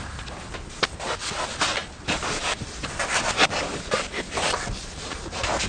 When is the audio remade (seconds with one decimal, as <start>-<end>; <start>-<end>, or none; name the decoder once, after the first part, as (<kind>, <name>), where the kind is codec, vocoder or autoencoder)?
1.8-5.2 (vocoder, BigVGAN v2)